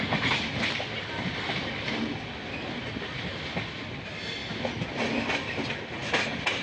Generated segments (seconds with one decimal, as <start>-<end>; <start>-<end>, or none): none